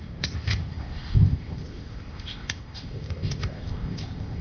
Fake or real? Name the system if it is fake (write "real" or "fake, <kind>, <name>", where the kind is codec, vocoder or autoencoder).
fake, codec, ZipCodec